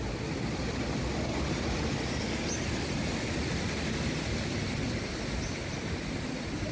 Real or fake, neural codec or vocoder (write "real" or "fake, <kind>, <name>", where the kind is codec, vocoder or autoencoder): real